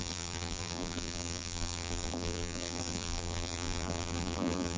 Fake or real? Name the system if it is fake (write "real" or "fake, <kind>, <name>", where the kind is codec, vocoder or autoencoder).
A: fake, vocoder, BigVGAN v2